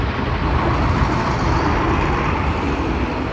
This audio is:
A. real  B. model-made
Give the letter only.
A